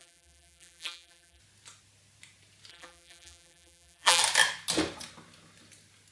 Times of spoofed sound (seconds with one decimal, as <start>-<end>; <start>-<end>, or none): 0.0-1.4; 2.7-4.2